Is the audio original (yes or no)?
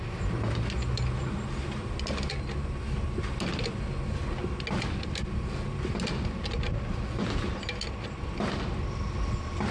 yes